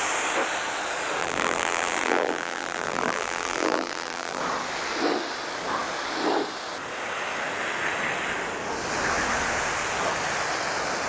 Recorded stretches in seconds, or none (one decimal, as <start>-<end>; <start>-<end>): 0.0-1.2; 4.4-11.1